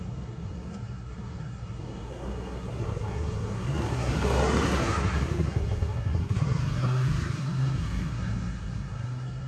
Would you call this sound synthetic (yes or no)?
yes